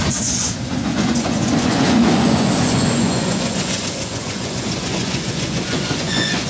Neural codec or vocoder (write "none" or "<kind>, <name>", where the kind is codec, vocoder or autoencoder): vocoder, Vocos